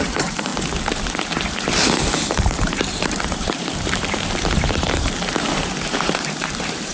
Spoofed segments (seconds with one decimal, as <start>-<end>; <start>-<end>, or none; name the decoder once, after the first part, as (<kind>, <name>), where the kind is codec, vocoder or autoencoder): 0.0-0.5 (vocoder, BigVGAN v2); 2.2-6.9